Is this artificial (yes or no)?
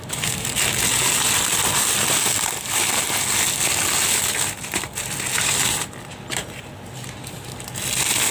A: no